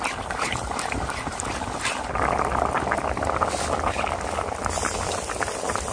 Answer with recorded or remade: recorded